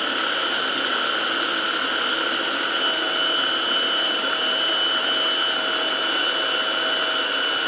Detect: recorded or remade recorded